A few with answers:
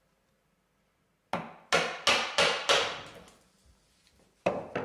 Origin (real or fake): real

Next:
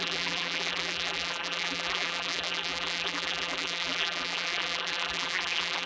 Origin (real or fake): fake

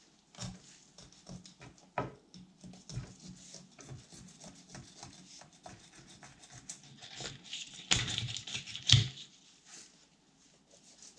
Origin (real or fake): real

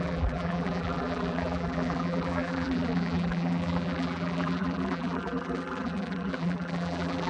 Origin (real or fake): fake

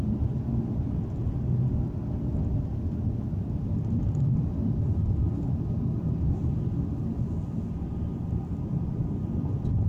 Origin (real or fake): real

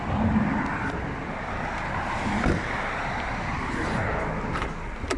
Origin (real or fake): fake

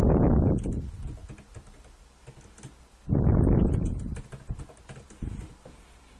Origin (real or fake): real